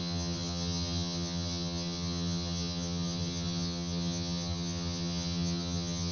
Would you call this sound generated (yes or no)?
yes